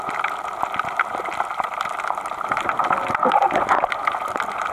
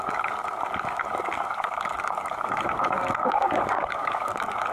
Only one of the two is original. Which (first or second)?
first